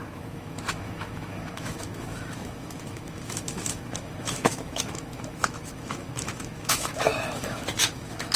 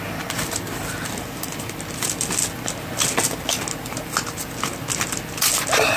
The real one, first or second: second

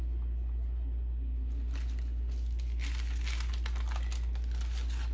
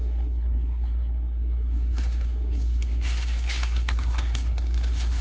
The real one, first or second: first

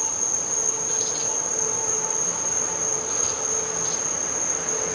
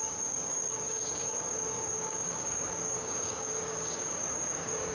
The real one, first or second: first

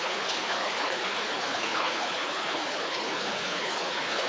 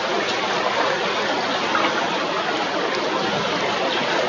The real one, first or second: second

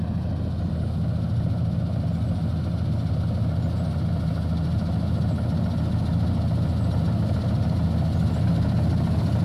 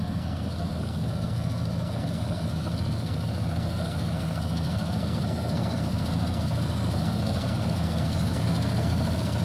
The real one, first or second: first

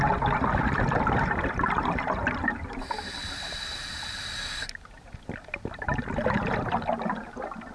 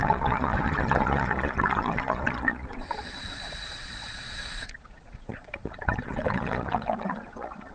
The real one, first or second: first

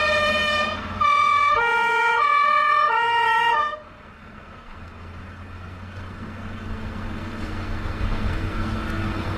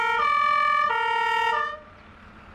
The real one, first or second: second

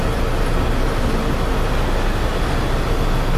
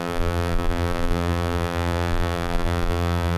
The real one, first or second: first